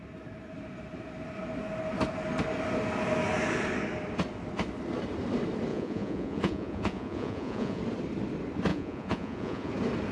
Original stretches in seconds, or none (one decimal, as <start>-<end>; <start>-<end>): 0.0-5.7; 7.8-8.7; 9.7-10.1